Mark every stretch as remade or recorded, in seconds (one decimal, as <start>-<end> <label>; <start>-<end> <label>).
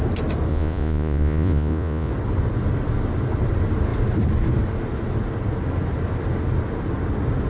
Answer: 0.0-0.5 recorded; 0.5-2.1 remade; 2.1-7.5 recorded